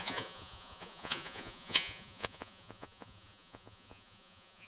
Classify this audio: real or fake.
fake